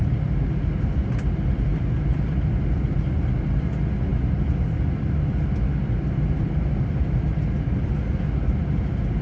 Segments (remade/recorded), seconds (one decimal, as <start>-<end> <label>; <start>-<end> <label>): 0.0-9.2 recorded